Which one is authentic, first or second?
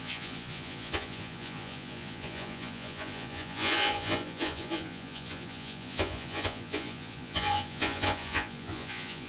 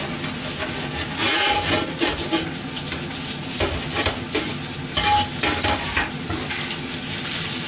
second